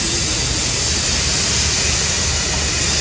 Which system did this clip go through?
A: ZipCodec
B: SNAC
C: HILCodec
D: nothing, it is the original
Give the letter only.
D